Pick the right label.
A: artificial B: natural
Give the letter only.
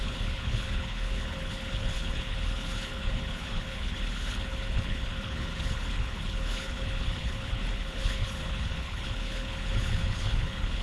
A